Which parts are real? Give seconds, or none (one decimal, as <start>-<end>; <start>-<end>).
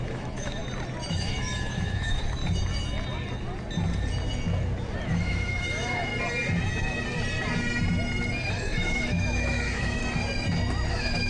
0.6-1.1; 2.4-5.0; 6.1-8.5; 10.0-10.9